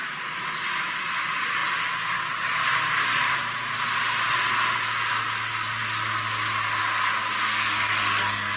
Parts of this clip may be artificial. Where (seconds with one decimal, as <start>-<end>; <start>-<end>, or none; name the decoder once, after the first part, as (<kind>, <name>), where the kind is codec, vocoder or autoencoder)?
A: 7.4-8.6 (codec, SNAC)